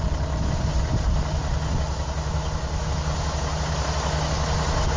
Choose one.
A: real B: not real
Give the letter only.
A